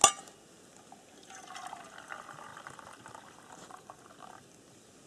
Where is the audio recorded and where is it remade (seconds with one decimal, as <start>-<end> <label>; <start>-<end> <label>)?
0.0-5.1 recorded